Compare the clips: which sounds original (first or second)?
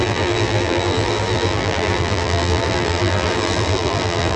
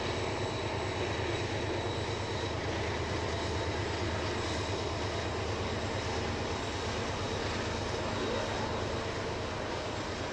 second